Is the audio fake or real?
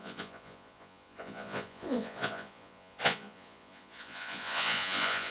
fake